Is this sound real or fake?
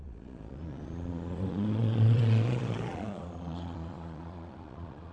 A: fake